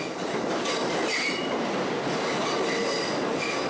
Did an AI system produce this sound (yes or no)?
no